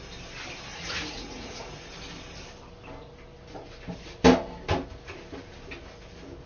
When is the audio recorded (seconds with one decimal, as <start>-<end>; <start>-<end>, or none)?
0.0-0.7; 1.9-6.5